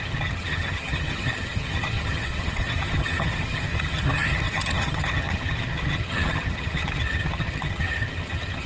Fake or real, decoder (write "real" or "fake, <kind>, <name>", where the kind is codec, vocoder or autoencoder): fake, vocoder, HiFi-GAN